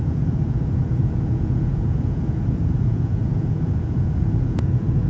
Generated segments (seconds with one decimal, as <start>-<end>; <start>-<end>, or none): 0.0-5.1